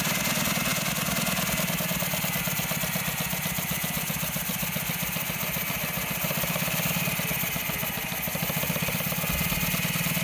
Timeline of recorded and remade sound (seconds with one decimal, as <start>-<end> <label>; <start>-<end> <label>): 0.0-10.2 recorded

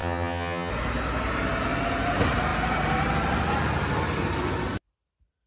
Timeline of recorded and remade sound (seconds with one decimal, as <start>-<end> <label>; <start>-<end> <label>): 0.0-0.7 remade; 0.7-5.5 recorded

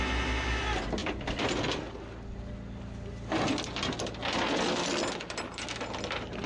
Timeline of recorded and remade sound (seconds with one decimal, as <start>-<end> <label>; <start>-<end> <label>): 0.0-1.0 recorded; 1.0-1.7 remade; 1.7-6.5 recorded

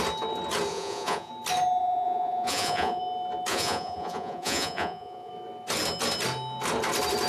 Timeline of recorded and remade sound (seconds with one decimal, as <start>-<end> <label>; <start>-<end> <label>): 0.0-0.7 recorded; 0.7-1.3 remade; 1.3-1.8 recorded; 1.8-3.0 remade; 3.0-3.5 recorded; 3.5-5.3 remade; 5.3-7.3 recorded

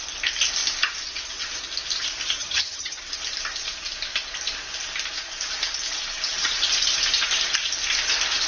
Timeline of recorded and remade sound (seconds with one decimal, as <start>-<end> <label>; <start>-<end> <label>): 0.0-2.4 recorded; 2.4-3.0 remade; 3.0-8.5 recorded

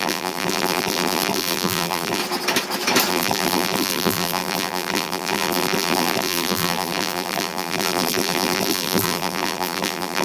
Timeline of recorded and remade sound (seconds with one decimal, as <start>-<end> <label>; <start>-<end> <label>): 0.0-2.2 remade; 2.2-3.1 recorded; 3.1-10.2 remade